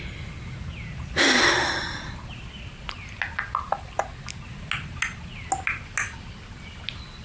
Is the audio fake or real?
real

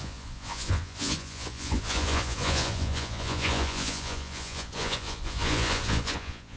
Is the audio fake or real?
fake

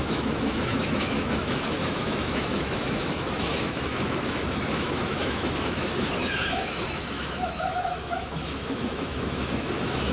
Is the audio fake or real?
fake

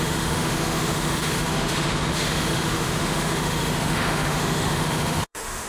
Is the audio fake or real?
fake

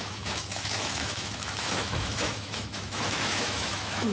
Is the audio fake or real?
fake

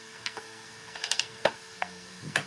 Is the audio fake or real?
fake